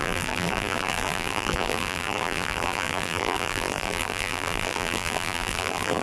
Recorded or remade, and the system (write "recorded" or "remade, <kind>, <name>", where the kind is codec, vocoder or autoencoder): remade, vocoder, BigVGAN v2